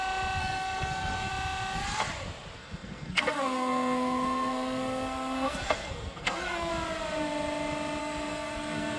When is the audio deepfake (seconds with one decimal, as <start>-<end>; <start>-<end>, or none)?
0.4-1.3; 2.6-6.7; 8.0-9.0